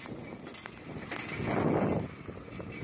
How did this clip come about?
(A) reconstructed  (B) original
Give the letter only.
B